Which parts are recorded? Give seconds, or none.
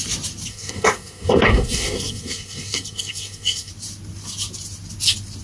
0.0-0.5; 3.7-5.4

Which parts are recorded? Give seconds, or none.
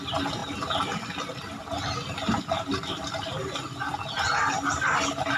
0.0-5.4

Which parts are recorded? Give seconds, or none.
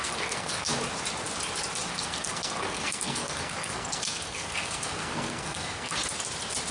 0.7-1.9; 6.0-6.7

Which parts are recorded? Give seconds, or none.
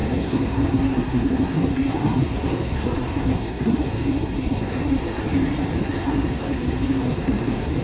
5.2-5.8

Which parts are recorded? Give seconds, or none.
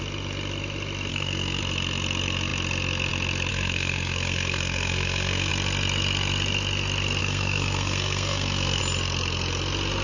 0.0-1.1; 1.6-3.5; 5.5-7.2; 8.8-10.0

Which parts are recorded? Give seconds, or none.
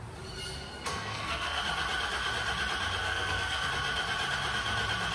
0.0-0.9; 1.6-3.0; 3.7-5.1